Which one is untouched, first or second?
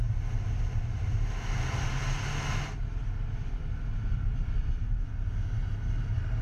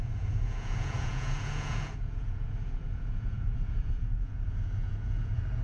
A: first